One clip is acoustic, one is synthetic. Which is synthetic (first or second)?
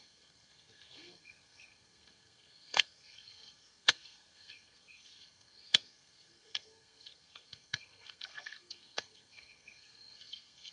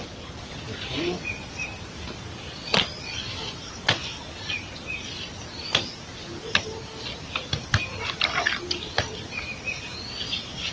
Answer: first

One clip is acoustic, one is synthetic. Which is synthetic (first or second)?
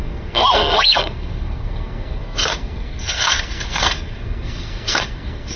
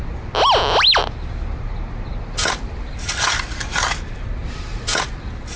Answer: first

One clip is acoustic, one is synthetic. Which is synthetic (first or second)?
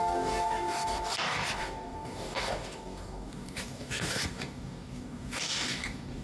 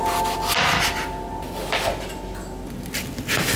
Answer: first